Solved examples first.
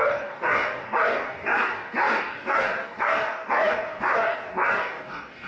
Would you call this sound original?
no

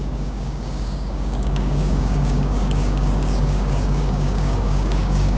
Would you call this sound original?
no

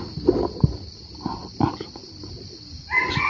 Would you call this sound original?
yes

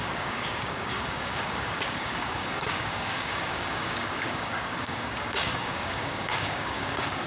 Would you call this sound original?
no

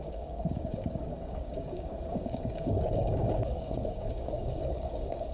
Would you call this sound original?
no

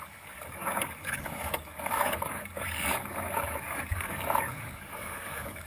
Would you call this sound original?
no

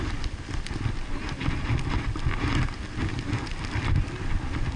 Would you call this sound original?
yes